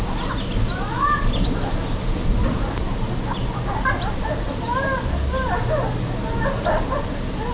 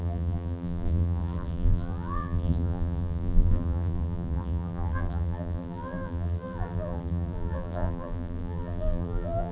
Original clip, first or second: first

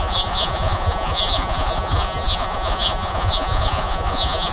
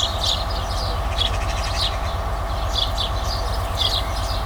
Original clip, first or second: second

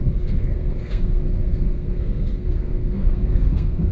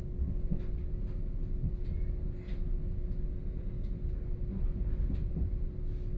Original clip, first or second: second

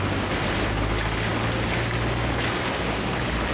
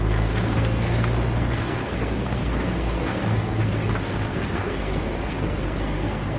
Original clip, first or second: first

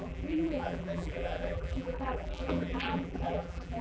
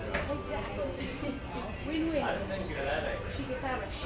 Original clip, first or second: second